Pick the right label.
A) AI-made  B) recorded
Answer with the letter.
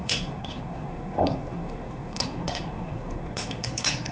A